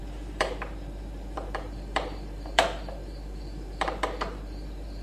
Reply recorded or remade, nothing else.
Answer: remade